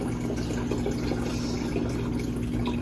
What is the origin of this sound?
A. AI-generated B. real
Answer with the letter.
B